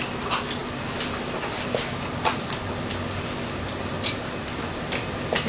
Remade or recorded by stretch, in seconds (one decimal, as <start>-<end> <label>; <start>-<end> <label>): 0.0-5.5 recorded

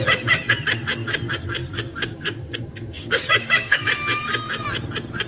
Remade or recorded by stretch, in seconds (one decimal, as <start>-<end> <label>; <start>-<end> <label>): 0.0-1.6 recorded; 1.6-3.8 remade; 3.8-5.3 recorded

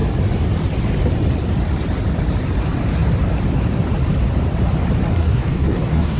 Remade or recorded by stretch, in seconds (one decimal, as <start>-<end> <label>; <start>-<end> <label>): 0.0-5.1 recorded; 5.1-6.2 remade

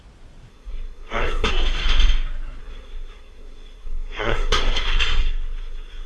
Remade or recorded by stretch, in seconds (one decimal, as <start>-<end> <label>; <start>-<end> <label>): 0.0-0.5 recorded; 0.5-1.5 remade; 1.5-2.6 recorded; 2.6-6.1 remade

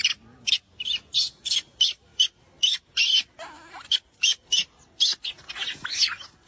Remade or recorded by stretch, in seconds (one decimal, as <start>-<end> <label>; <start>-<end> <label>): 0.0-6.5 recorded